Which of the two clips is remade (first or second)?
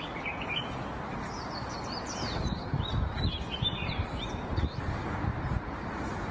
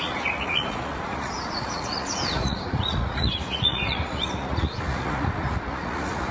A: second